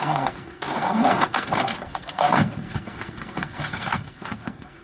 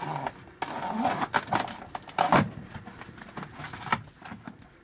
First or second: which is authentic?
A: second